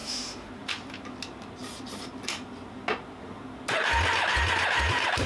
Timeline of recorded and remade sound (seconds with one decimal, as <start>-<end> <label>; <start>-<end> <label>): 0.0-0.5 remade; 0.5-5.3 recorded